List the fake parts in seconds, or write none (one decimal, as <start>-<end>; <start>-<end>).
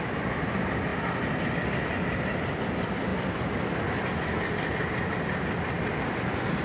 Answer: none